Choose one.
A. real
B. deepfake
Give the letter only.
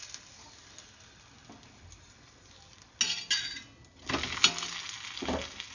A